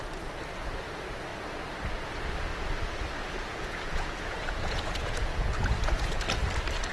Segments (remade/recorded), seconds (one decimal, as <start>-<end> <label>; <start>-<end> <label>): 0.0-3.2 recorded; 3.2-6.2 remade; 6.2-6.9 recorded